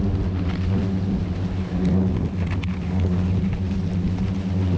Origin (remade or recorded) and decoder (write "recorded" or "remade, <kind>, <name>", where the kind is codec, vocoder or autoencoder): recorded